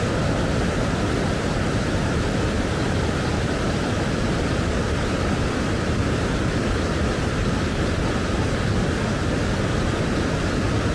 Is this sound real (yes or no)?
no